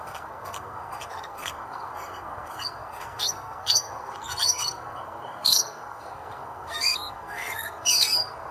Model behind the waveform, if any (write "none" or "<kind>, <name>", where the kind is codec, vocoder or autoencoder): codec, SNAC